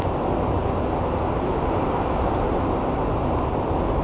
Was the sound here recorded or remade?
recorded